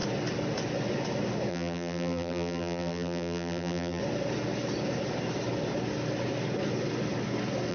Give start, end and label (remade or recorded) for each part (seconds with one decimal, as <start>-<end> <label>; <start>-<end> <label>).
0.0-1.5 recorded; 1.5-4.0 remade; 4.0-7.7 recorded